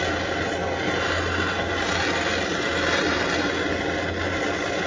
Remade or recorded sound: recorded